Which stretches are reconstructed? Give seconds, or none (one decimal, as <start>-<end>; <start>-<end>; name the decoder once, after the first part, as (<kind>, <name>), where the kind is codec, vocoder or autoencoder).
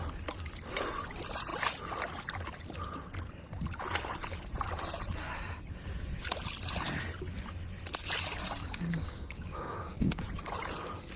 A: 8.6-10.2 (codec, DAC)